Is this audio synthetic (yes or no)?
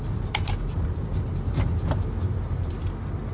no